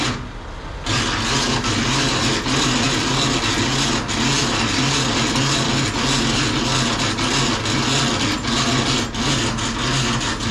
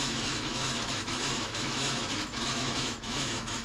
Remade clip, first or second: second